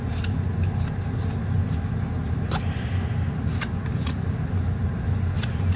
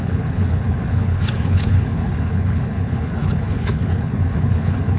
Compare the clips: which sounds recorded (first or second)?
first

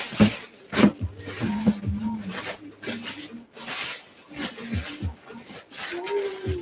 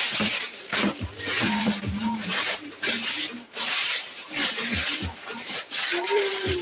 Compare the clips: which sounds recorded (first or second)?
first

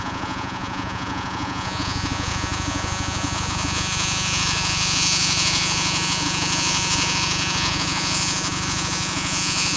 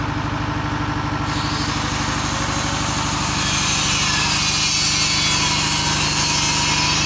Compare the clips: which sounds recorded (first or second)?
second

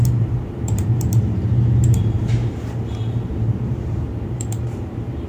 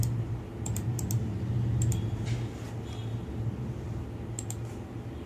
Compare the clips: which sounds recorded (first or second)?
second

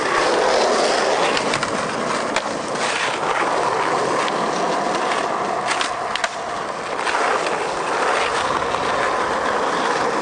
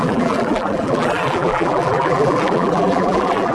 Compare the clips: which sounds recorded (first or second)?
first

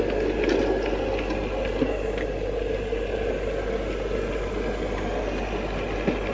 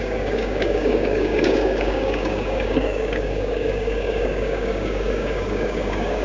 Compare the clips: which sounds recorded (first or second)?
first